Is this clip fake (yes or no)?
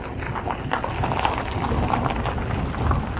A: no